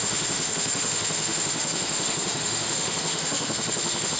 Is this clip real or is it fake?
fake